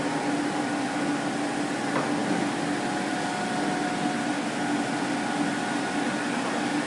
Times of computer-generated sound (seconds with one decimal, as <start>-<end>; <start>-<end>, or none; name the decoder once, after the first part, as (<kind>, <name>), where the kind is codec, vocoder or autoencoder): none